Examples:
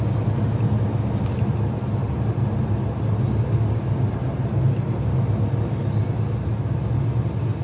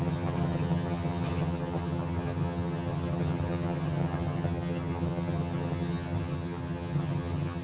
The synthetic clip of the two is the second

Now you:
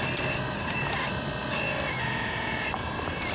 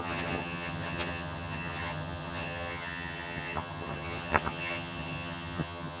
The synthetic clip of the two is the second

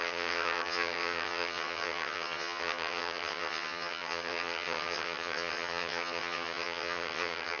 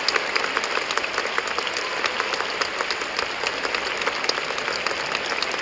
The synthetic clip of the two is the first